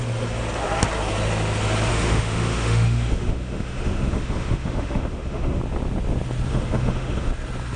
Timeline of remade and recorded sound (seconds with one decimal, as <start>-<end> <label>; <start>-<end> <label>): 0.0-1.9 recorded; 1.9-5.6 remade; 5.6-6.5 recorded; 6.5-7.3 remade; 7.3-7.8 recorded